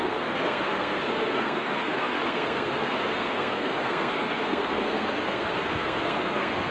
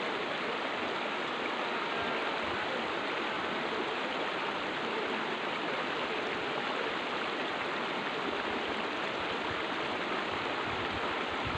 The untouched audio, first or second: second